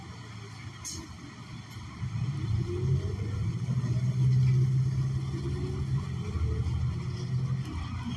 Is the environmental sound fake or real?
real